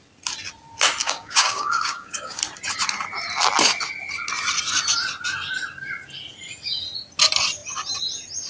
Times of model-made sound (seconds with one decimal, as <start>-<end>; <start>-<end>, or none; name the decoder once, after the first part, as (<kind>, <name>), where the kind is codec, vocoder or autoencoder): 1.0-2.4 (codec, DAC)